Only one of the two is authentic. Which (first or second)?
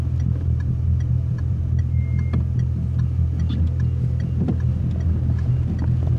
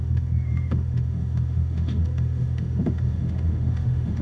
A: first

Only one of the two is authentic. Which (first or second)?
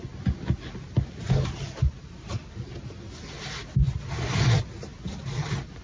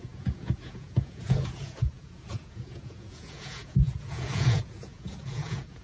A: first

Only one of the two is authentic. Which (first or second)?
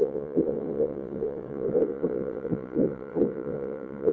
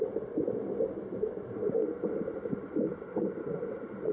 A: second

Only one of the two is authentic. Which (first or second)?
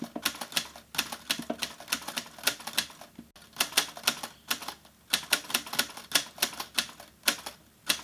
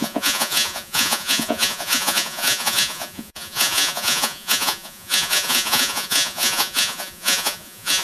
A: first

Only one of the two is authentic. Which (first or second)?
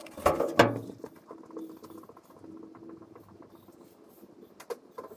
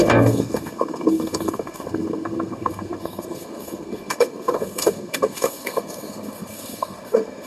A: first